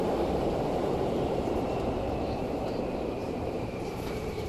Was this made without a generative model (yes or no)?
no